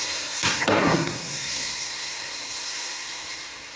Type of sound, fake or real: fake